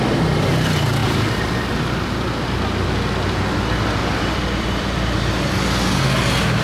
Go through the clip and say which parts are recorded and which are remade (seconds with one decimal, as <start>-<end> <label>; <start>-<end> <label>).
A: 0.0-4.0 recorded; 4.0-5.1 remade; 5.1-6.6 recorded